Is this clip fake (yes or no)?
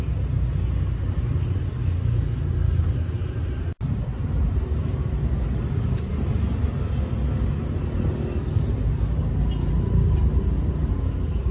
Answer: no